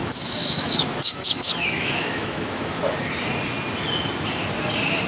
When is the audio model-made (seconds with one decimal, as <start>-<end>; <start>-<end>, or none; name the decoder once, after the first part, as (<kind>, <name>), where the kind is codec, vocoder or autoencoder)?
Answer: 0.0-2.8 (autoencoder, DAC-VAE)

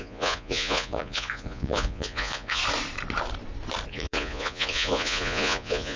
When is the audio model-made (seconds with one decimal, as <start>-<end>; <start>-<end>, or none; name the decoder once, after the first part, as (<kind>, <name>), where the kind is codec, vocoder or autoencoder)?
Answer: 0.0-2.6 (vocoder, Vocos); 3.9-6.0